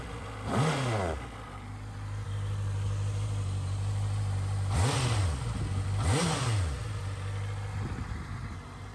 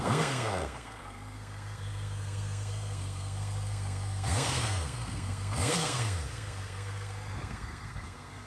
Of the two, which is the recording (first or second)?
first